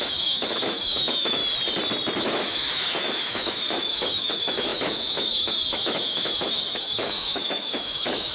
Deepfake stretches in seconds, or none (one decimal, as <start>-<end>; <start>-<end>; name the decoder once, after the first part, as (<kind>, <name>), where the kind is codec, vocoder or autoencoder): 0.0-1.4 (autoencoder, DAC-VAE); 2.2-8.3